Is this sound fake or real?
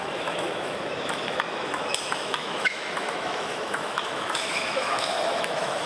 fake